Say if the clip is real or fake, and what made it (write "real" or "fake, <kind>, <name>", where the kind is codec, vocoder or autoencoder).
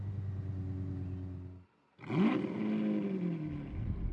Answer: real